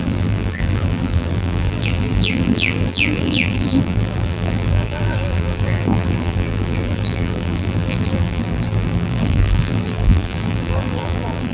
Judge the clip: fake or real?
fake